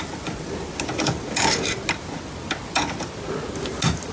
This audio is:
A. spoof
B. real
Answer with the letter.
B